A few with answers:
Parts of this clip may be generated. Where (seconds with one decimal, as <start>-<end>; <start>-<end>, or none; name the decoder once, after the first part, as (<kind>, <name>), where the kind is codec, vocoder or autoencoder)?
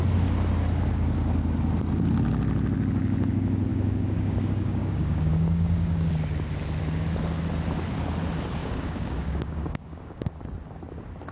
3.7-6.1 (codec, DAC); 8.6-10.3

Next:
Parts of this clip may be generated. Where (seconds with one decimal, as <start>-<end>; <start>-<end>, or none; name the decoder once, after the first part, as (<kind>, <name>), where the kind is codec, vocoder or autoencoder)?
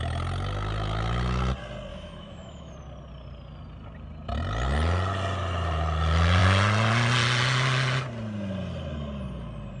1.9-2.7 (autoencoder, DAC-VAE)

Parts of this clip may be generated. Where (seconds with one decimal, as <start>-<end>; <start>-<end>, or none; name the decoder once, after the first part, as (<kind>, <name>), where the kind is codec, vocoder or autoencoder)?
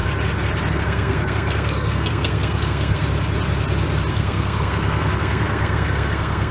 0.7-3.0 (codec, SNAC); 4.1-6.5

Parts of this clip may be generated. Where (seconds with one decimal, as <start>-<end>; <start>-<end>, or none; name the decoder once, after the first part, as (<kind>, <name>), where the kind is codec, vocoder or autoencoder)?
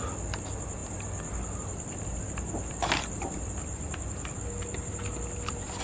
none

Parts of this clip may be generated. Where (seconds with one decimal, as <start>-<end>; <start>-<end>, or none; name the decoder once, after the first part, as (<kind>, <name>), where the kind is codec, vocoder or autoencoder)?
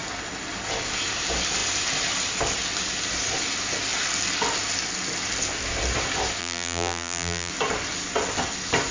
6.4-7.5 (vocoder, BigVGAN v2)